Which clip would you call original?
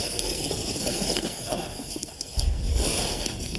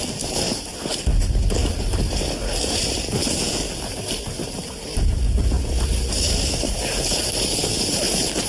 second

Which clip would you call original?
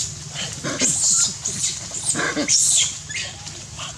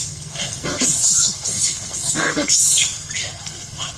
first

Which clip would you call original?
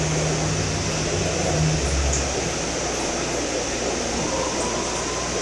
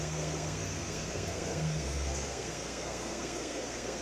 first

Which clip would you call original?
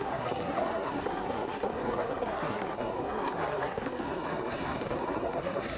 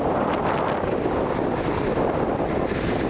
second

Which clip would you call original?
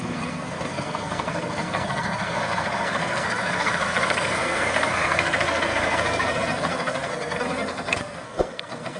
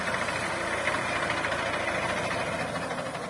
second